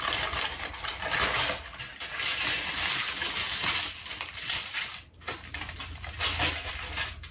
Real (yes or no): yes